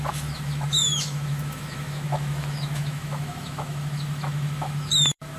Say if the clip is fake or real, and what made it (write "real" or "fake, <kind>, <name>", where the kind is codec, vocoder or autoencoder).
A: fake, autoencoder, DAC-VAE